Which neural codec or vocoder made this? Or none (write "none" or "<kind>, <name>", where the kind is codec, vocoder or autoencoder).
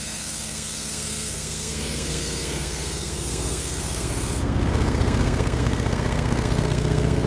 codec, SNAC